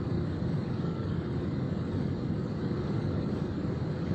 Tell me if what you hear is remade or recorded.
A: remade